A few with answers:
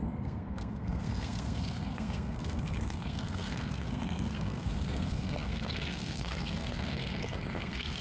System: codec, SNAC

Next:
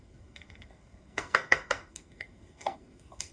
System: codec, SNAC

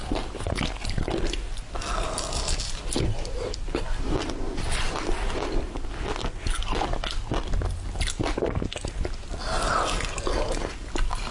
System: none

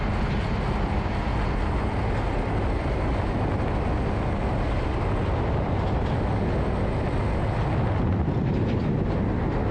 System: none